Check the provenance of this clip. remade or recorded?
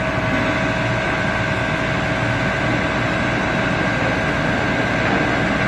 recorded